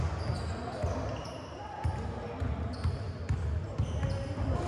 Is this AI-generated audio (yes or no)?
no